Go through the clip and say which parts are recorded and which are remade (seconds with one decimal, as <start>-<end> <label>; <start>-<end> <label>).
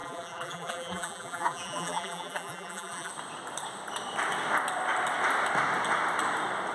0.0-3.1 remade; 3.1-6.7 recorded